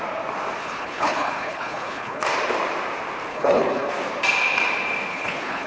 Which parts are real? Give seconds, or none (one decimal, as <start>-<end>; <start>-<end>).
0.0-0.6; 2.2-3.3; 3.9-5.1